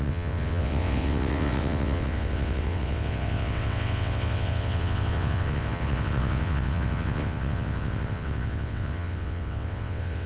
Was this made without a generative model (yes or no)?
no